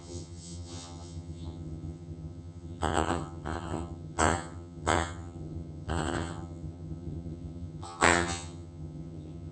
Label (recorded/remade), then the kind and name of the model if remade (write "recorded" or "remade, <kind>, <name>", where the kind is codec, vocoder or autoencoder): remade, vocoder, HiFi-GAN